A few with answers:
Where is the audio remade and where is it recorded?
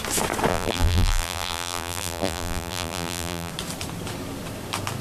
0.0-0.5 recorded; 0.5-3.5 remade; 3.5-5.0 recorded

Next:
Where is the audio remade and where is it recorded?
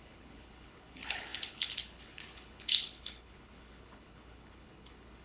0.0-5.2 remade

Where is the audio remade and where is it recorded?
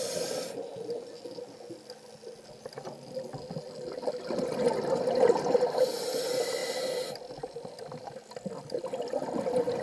0.0-9.8 recorded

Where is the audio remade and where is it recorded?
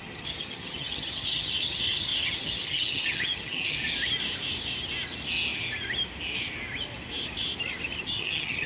0.0-3.8 remade; 3.8-8.0 recorded; 8.0-8.7 remade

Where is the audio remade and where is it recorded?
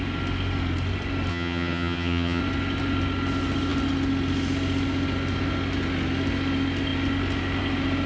0.0-1.3 recorded; 1.3-2.4 remade; 2.4-8.1 recorded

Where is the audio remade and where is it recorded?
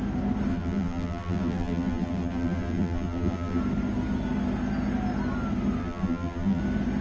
0.0-0.5 recorded; 0.5-3.6 remade; 3.6-5.8 recorded; 5.8-6.6 remade; 6.6-7.0 recorded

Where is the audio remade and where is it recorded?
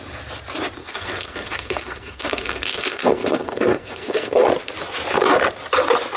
0.0-0.8 recorded; 0.8-4.5 remade; 4.5-6.2 recorded